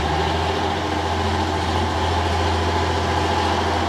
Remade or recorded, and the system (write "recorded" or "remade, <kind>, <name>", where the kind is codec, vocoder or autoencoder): recorded